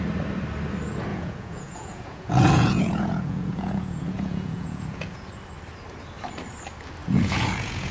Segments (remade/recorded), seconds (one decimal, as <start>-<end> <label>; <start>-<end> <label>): 0.0-1.1 recorded; 1.1-5.3 remade; 5.3-7.0 recorded; 7.0-7.9 remade